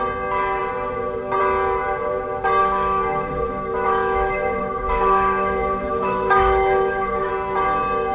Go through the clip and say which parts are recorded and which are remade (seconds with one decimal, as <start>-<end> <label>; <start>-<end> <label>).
0.0-2.6 recorded; 2.6-7.3 remade; 7.3-8.1 recorded

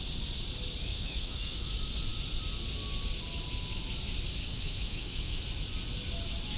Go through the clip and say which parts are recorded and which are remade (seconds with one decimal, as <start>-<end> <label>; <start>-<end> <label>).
0.0-0.8 recorded; 0.8-1.7 remade; 1.7-4.5 recorded; 4.5-5.4 remade; 5.4-6.6 recorded

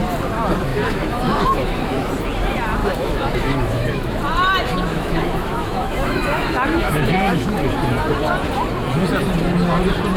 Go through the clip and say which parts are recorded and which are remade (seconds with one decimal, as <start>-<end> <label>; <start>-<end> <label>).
0.0-0.7 recorded; 0.7-2.1 remade; 2.1-2.8 recorded; 2.8-4.2 remade; 4.2-4.9 recorded; 4.9-7.5 remade; 7.5-10.2 recorded

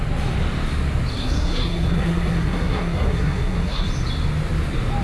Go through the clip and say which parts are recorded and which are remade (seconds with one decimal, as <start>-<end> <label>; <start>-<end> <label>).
0.0-1.1 recorded; 1.1-3.9 remade; 3.9-5.0 recorded

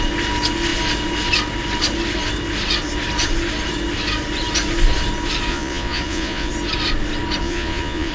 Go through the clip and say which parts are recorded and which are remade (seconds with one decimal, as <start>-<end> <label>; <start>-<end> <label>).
0.0-5.5 recorded; 5.5-6.5 remade; 6.5-7.4 recorded; 7.4-8.1 remade

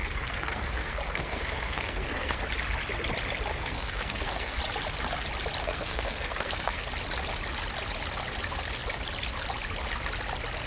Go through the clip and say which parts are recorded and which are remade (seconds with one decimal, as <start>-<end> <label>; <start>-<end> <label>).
0.0-2.4 remade; 2.4-3.5 recorded; 3.5-4.6 remade; 4.6-5.6 recorded; 5.6-6.9 remade; 6.9-10.7 recorded

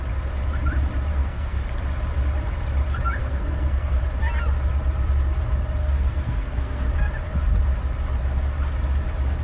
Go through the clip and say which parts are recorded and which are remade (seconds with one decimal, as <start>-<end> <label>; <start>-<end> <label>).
0.0-1.1 recorded; 1.1-1.6 remade; 1.6-3.2 recorded; 3.2-4.0 remade; 4.0-5.8 recorded; 5.8-6.9 remade; 6.9-9.4 recorded